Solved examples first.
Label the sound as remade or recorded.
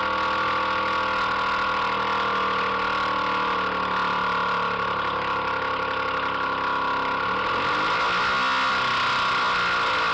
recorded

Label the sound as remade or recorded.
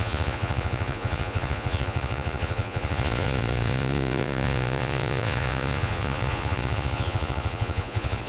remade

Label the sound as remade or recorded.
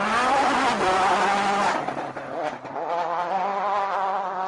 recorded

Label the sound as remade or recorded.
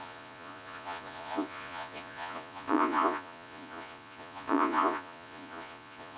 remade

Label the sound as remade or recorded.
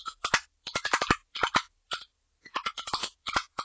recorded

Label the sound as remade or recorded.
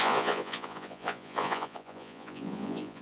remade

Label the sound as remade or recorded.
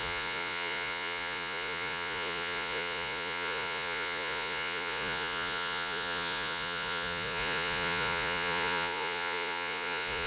remade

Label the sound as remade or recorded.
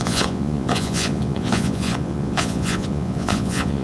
remade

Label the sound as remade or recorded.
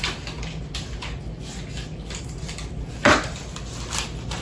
recorded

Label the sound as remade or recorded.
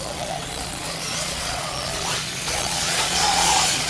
remade